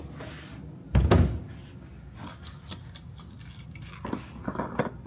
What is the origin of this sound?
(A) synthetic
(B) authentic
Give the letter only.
B